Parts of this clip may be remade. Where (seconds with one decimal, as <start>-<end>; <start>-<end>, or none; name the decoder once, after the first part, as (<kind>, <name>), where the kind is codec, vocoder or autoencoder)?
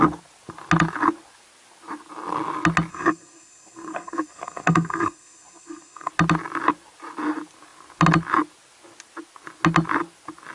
2.9-6.1 (codec, SNAC)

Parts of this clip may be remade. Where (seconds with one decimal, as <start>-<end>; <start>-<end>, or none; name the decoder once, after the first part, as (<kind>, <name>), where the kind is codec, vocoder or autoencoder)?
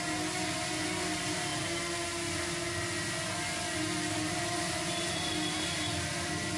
none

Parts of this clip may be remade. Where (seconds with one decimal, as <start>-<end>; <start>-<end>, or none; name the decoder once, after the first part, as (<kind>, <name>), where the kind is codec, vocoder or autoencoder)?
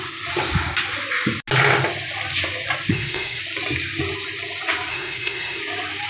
2.9-3.4 (codec, SNAC); 4.9-5.6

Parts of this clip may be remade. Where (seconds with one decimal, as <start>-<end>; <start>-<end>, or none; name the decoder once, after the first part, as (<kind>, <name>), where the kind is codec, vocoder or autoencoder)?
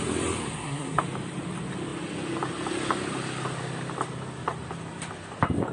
0.4-1.0 (codec, SNAC)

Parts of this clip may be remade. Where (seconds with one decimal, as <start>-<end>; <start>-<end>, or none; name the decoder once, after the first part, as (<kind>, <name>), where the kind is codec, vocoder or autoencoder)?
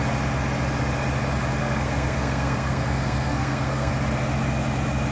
1.6-3.9 (codec, SNAC)